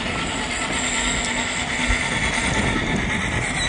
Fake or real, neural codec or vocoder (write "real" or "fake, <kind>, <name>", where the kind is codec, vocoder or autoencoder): real